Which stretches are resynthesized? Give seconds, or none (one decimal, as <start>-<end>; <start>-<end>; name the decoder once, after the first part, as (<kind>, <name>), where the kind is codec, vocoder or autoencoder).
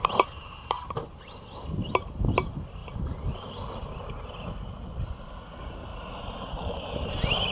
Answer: none